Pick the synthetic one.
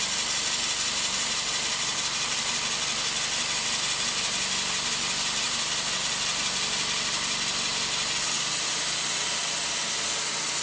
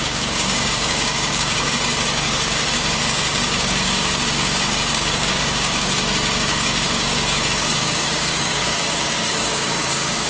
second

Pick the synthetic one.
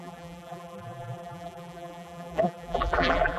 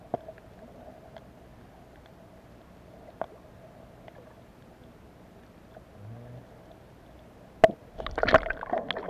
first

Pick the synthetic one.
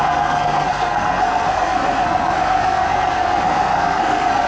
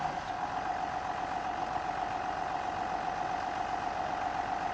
first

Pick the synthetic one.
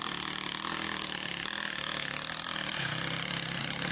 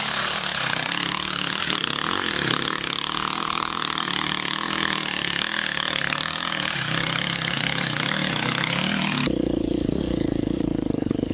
second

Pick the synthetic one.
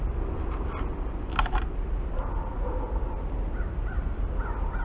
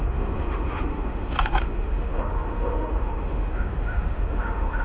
second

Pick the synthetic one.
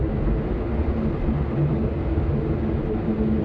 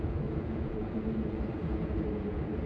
second